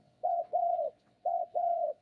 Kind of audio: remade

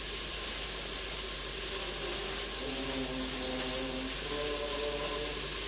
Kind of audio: recorded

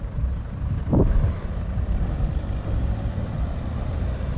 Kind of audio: remade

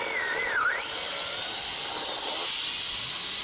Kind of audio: recorded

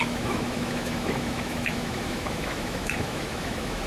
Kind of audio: remade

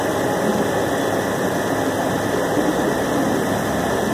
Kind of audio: recorded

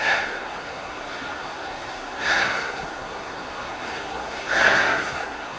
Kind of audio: remade